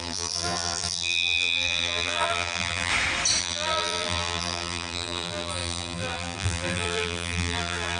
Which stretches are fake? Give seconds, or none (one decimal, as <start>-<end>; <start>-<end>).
0.0-2.9; 3.4-8.0